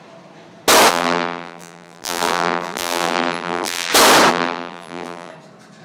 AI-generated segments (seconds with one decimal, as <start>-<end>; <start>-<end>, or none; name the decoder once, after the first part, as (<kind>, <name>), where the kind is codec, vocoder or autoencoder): 0.9-3.9 (vocoder, BigVGAN v2); 4.3-5.3